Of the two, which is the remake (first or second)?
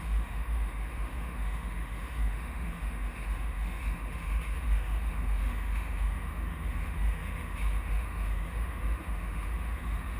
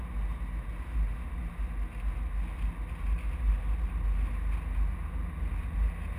first